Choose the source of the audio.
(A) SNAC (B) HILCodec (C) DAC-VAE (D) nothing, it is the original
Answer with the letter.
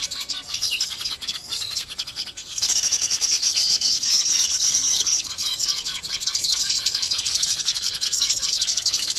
A